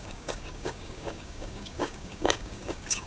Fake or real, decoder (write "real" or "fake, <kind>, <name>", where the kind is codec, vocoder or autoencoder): fake, codec, DAC